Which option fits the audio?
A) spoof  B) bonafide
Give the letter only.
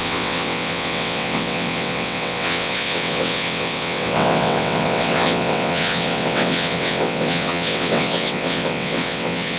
A